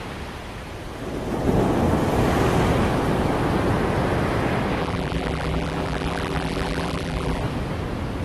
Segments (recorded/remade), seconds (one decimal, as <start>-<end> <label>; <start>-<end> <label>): 0.0-4.8 recorded; 4.8-7.4 remade; 7.4-8.2 recorded